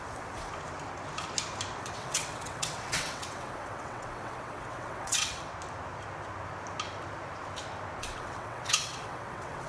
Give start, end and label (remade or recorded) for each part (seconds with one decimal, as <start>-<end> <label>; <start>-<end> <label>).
0.0-0.5 remade; 0.5-1.8 recorded; 1.8-5.5 remade; 5.5-8.0 recorded; 8.0-9.7 remade